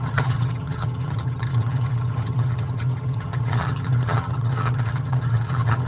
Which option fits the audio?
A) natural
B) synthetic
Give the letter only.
B